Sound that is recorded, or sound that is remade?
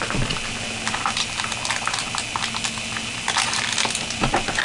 recorded